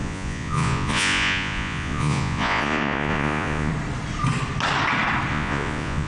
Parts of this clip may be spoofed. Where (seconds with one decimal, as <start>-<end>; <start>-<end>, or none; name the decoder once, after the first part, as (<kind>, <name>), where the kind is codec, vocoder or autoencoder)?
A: 0.0-3.7 (vocoder, Vocos); 5.3-6.1